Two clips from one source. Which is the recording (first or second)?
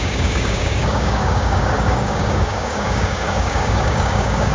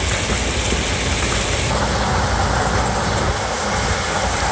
second